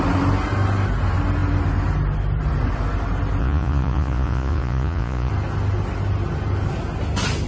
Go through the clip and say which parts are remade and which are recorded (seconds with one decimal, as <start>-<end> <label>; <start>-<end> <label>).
0.0-3.4 recorded; 3.4-5.3 remade; 5.3-7.5 recorded